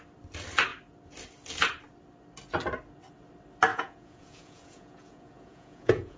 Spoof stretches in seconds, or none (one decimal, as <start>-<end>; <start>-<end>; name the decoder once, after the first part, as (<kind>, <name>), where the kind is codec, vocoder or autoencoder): 3.7-6.2 (vocoder, Vocos)